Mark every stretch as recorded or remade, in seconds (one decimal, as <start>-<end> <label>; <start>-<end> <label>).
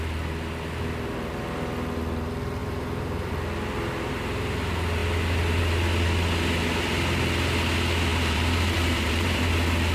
0.0-2.6 recorded; 2.6-3.3 remade; 3.3-8.1 recorded; 8.1-9.5 remade; 9.5-9.9 recorded